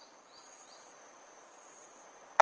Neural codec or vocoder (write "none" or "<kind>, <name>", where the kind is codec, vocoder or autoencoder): vocoder, Vocos